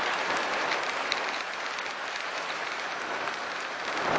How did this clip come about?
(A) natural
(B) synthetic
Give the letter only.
B